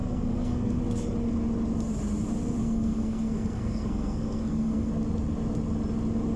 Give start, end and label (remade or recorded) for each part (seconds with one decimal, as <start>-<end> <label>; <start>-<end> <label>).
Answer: 0.0-0.8 remade; 0.8-2.6 recorded; 2.6-4.9 remade; 4.9-6.4 recorded